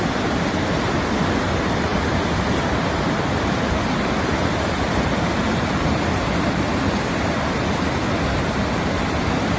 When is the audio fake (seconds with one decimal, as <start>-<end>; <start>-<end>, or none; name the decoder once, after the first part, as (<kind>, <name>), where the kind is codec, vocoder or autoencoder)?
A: 1.9-6.5 (vocoder, BigVGAN v2)